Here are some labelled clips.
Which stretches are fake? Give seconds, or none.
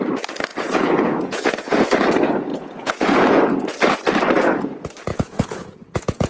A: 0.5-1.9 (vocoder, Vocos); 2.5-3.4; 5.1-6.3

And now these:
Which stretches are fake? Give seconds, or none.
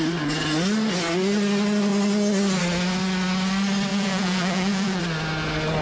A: 3.9-5.0 (vocoder, Vocos)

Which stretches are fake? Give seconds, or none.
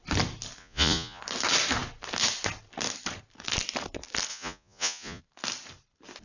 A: 0.6-1.2 (vocoder, Vocos); 4.3-5.2